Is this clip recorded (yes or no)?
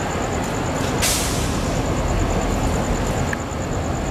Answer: yes